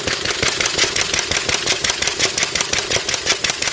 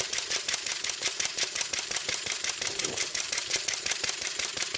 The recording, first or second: first